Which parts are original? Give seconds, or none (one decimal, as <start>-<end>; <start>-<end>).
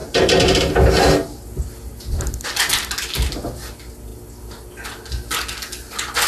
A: 0.7-6.3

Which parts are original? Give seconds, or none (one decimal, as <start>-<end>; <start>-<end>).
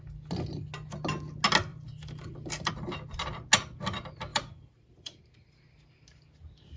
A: 0.0-1.7; 2.7-4.3; 5.2-6.8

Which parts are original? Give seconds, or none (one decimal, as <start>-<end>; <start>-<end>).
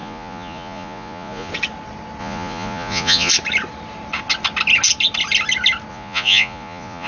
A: 1.5-2.2; 3.3-5.9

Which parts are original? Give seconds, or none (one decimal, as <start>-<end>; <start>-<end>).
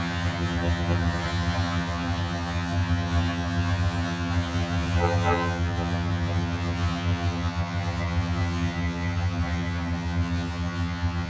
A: none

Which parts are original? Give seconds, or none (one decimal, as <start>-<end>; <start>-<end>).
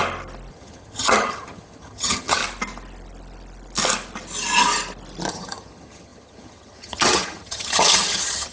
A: 0.0-0.5; 2.4-5.3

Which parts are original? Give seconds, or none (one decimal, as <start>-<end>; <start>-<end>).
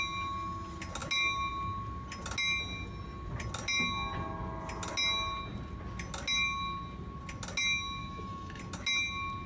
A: 0.0-8.0; 8.6-9.5